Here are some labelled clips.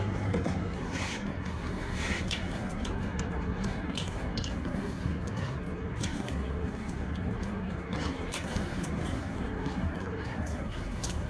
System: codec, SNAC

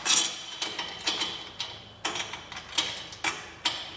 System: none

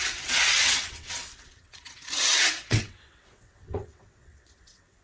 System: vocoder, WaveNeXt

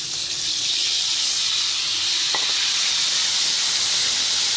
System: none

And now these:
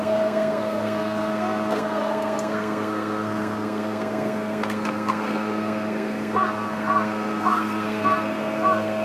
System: codec, SNAC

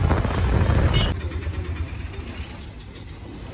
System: none